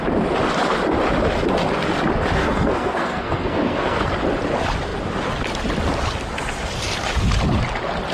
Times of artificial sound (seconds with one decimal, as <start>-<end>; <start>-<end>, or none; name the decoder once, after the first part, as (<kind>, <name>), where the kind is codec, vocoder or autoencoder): 2.4-4.1 (codec, SNAC)